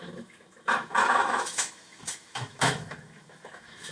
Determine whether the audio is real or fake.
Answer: fake